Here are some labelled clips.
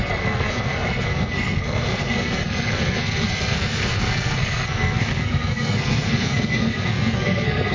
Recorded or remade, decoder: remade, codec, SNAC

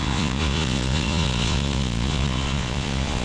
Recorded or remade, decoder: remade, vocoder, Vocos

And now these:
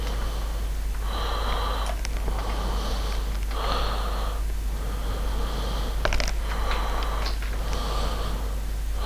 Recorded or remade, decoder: recorded